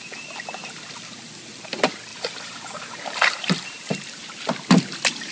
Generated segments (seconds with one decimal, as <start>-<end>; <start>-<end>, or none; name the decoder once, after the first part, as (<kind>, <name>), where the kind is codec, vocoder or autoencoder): 2.1-3.9 (vocoder, BigVGAN v2)